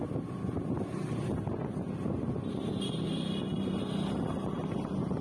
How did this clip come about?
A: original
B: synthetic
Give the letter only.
A